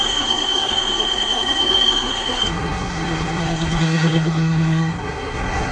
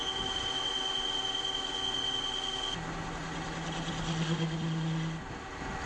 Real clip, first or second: second